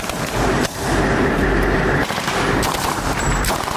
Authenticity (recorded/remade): remade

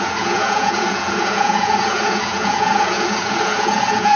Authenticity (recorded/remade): remade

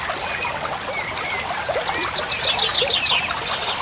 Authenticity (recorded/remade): recorded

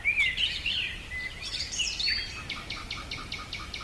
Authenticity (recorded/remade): recorded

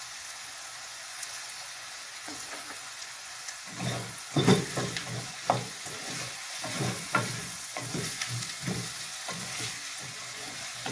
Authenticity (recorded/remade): remade